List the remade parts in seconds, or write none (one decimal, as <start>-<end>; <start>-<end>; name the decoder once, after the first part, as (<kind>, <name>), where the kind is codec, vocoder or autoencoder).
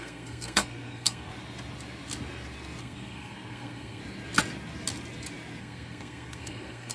0.0-1.3 (codec, SNAC); 2.8-4.0; 5.6-6.9